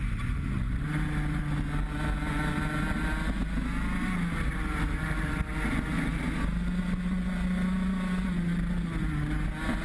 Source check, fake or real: real